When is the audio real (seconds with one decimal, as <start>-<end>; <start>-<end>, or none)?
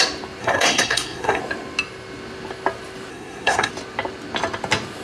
0.0-0.4; 1.4-3.1; 3.7-5.0